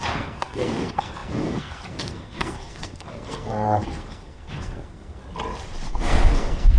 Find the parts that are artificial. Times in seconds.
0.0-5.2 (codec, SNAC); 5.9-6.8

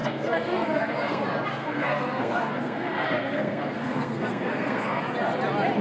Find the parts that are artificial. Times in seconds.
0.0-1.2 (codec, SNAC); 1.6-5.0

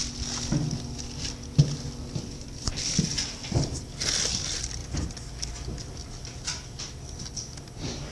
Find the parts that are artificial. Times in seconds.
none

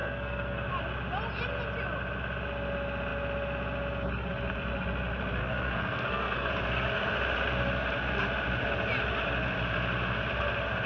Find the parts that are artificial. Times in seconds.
0.0-0.7 (codec, SNAC); 5.4-6.5

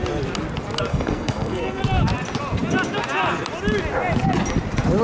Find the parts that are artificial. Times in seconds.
0.9-1.8 (codec, SNAC)

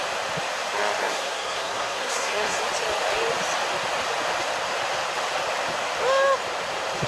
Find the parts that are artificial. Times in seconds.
1.0-2.6 (codec, SNAC)

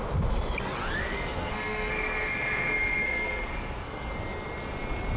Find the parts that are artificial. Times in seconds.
1.0-4.1 (codec, SNAC)